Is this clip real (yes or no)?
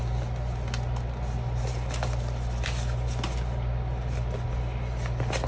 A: yes